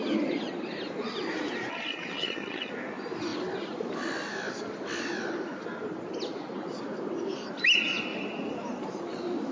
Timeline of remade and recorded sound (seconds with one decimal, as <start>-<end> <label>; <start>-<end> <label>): 0.0-1.7 recorded; 1.7-2.7 remade; 2.7-9.5 recorded